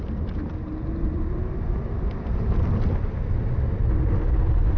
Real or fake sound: real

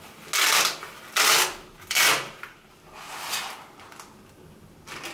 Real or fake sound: real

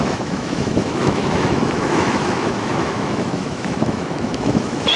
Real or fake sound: fake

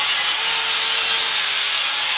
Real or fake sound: real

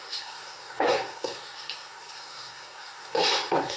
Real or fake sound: fake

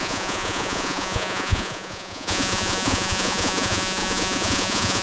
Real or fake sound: fake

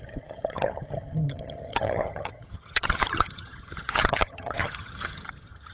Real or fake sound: fake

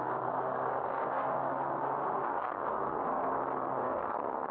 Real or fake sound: fake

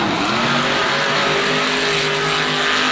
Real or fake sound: real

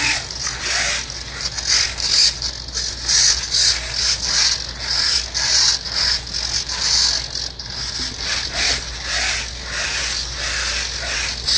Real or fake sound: real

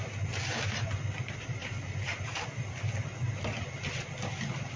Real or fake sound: real